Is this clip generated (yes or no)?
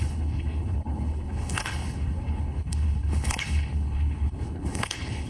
yes